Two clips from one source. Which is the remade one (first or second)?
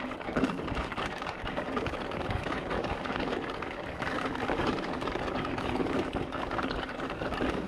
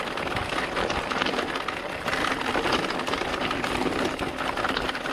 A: first